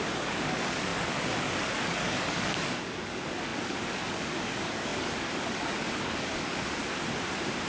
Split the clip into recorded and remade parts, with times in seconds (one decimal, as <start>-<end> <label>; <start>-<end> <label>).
0.0-6.8 remade; 6.8-7.7 recorded